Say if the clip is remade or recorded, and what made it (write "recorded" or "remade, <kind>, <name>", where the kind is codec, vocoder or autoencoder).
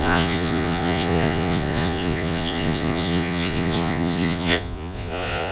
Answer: remade, vocoder, Vocos